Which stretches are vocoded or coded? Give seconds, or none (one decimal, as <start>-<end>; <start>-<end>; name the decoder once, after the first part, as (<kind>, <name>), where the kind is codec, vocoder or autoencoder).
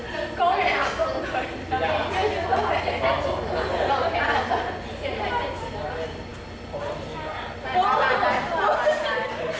none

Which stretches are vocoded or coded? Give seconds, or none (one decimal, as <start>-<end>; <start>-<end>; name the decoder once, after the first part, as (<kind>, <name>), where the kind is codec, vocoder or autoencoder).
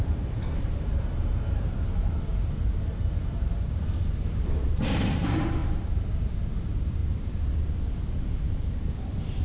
0.0-7.0 (vocoder, BigVGAN v2); 8.3-9.4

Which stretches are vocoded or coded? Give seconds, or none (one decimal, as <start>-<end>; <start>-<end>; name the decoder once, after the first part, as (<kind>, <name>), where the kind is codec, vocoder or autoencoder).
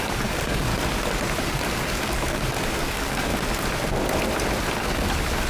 0.0-0.7 (codec, DAC); 1.4-3.3; 4.8-5.5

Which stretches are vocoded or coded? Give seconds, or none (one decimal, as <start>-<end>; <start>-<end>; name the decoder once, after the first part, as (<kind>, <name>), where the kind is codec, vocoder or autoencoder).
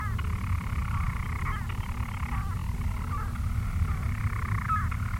0.8-1.4 (vocoder, BigVGAN v2)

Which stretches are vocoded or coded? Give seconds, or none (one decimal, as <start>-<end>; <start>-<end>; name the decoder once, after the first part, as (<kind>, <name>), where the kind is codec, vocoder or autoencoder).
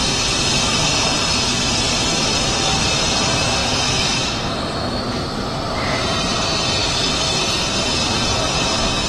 3.6-5.0 (autoencoder, DAC-VAE); 6.8-7.4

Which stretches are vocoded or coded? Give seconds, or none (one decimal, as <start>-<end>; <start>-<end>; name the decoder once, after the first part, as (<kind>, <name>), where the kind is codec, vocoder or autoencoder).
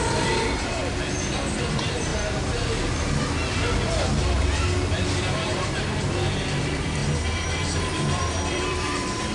0.0-2.1 (vocoder, BigVGAN v2); 5.2-9.3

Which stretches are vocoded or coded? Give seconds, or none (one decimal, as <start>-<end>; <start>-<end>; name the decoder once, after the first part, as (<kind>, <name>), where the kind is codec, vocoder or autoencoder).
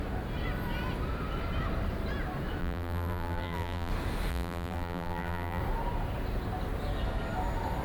2.6-3.9 (vocoder, BigVGAN v2); 4.3-5.6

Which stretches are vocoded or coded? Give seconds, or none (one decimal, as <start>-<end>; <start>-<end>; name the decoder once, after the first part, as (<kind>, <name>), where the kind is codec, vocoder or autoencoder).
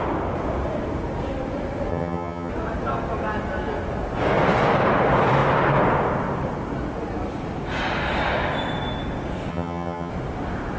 1.9-2.5 (vocoder, HiFi-GAN); 9.5-10.1